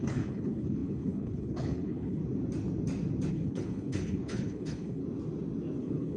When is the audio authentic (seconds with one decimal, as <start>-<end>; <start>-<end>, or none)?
2.2-3.3; 5.0-5.8